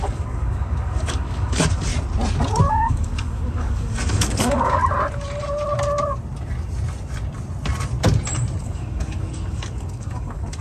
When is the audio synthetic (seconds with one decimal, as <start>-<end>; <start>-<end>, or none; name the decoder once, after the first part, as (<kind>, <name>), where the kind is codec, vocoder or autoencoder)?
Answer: 0.0-1.9 (codec, DAC); 2.7-4.8; 8.6-10.6